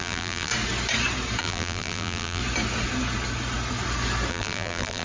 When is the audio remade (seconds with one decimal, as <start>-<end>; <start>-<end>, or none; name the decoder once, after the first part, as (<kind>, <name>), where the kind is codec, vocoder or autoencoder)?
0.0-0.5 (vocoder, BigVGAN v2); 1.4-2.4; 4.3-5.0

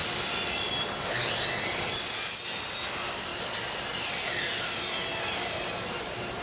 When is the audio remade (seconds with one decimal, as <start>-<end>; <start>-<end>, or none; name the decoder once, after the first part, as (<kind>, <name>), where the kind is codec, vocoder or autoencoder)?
none

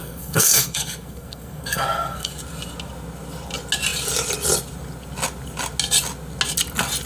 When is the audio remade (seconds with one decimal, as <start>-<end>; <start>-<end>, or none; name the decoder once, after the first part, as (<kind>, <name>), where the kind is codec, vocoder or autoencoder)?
0.0-2.3 (codec, SNAC)

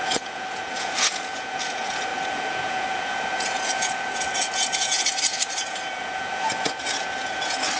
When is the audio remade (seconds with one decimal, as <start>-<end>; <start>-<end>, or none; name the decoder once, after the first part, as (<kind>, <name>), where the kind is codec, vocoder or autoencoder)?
0.0-7.8 (vocoder, Vocos)